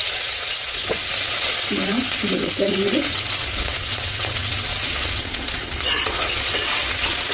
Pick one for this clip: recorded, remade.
remade